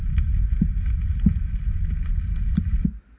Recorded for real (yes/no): yes